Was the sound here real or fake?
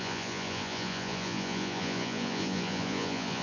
fake